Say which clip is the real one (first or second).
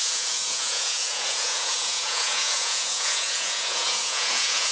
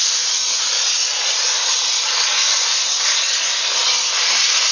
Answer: second